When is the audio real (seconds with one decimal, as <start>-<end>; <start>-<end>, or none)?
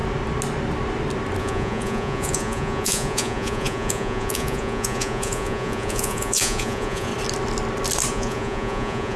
0.0-1.4; 7.1-8.1